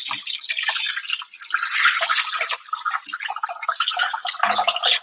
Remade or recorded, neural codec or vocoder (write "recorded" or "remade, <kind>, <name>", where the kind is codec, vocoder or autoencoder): recorded